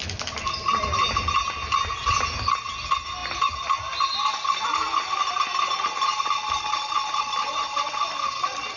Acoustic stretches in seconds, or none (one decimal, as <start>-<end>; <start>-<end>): 0.0-8.8